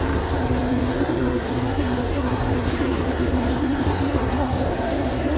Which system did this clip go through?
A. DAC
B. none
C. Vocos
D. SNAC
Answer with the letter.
D